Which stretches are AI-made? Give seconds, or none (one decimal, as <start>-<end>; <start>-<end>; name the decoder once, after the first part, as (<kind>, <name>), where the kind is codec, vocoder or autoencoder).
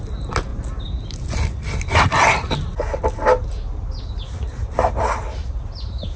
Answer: none